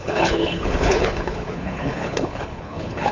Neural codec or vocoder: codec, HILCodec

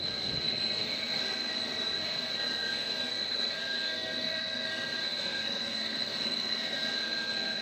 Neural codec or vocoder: codec, SNAC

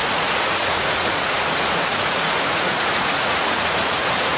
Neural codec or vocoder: vocoder, Vocos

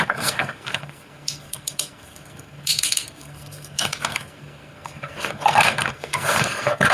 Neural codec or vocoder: codec, SNAC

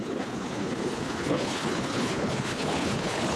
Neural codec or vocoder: codec, HILCodec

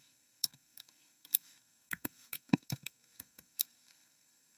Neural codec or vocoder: codec, SNAC